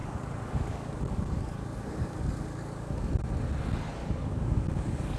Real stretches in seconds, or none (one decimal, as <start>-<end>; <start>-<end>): 3.1-4.0